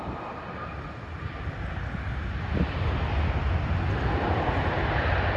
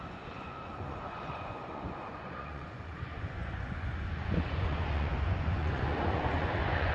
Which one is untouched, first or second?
first